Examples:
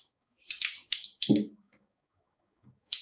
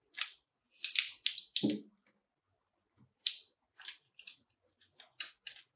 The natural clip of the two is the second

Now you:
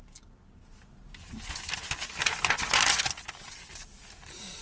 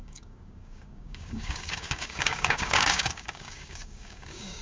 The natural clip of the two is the first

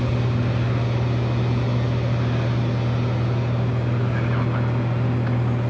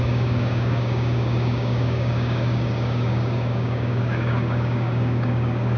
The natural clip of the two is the first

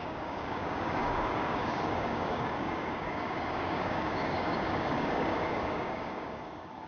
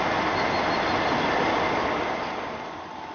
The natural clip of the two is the second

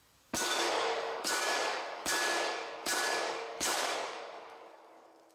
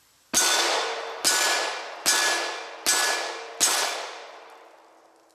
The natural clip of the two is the second